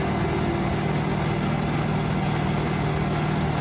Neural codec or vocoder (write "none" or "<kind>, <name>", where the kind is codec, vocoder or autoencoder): none